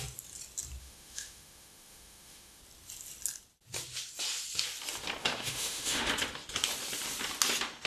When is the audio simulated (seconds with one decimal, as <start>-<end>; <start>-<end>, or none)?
0.8-2.6; 5.2-6.1